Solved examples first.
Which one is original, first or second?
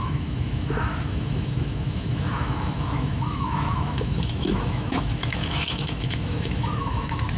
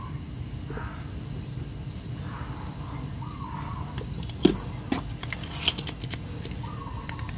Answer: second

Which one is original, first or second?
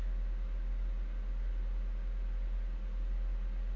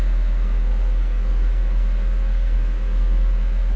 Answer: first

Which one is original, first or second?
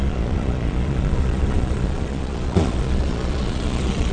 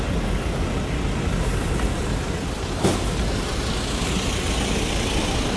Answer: second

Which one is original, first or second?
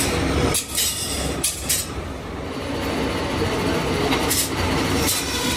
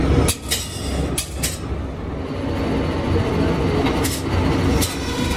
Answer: second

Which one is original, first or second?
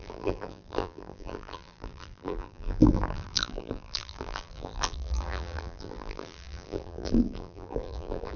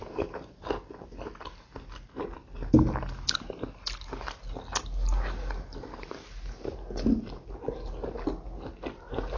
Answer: second